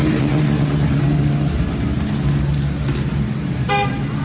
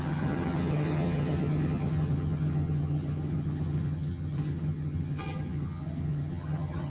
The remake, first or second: second